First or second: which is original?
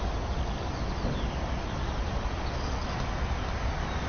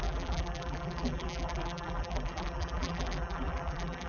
first